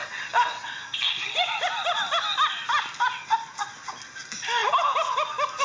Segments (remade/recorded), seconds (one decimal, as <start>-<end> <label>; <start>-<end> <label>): 0.0-5.6 recorded